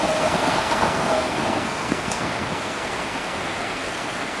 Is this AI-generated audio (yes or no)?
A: yes